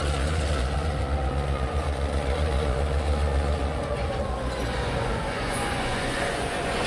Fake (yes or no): yes